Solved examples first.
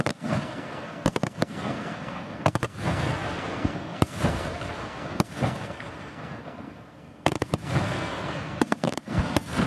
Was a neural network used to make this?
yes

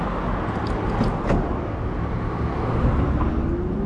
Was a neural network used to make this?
no